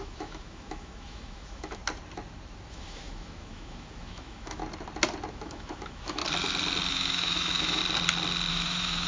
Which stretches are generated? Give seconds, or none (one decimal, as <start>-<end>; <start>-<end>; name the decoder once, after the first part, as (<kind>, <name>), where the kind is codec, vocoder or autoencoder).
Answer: 0.0-1.8 (autoencoder, DAC-VAE); 2.7-4.6; 5.3-6.2; 6.9-7.8; 8.5-9.1